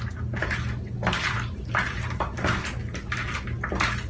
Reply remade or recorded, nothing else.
recorded